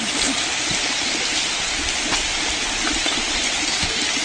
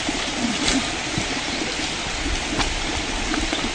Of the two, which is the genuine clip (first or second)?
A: first